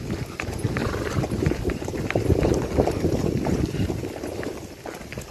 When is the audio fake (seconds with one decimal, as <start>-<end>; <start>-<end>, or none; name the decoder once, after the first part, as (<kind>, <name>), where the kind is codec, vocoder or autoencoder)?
0.8-1.6 (vocoder, BigVGAN v2); 3.2-4.0